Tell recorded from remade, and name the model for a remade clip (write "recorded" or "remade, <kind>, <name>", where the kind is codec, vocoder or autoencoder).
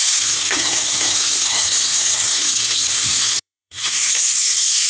remade, codec, SNAC